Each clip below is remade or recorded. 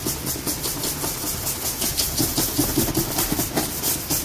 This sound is recorded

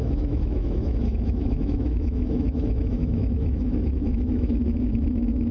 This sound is remade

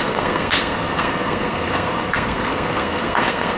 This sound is remade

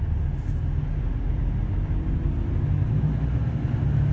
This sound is recorded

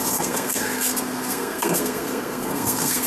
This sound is remade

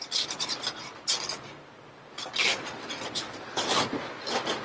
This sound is recorded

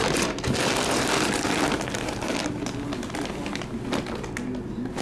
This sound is recorded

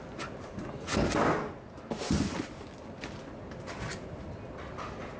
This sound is recorded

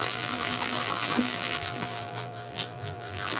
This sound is remade